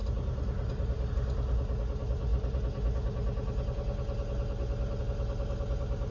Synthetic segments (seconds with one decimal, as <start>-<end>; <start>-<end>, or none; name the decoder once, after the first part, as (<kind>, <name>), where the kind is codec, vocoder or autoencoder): none